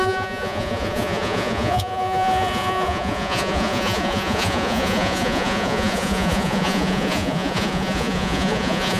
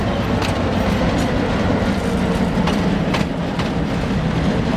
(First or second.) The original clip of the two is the second